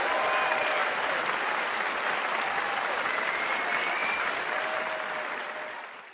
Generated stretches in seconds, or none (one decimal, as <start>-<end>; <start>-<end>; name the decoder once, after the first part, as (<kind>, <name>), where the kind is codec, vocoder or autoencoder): none